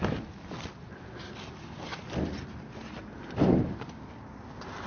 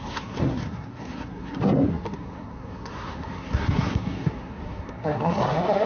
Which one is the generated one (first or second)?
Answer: second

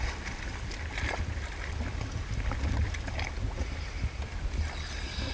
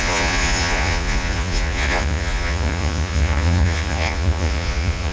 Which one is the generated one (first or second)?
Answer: second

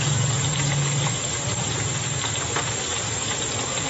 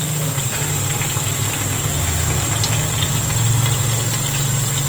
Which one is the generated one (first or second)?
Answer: first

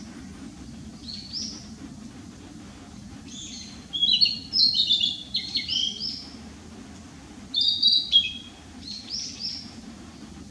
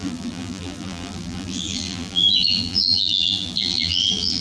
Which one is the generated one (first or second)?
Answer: second